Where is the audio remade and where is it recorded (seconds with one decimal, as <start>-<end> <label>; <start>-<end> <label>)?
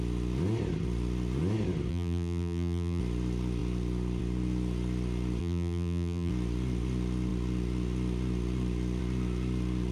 0.0-1.9 recorded; 1.9-3.0 remade; 3.0-5.4 recorded; 5.4-6.3 remade; 6.3-9.9 recorded